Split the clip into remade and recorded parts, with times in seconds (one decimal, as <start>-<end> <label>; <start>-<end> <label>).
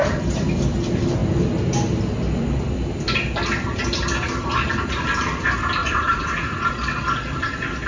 0.0-5.8 recorded; 5.8-6.7 remade; 6.7-7.9 recorded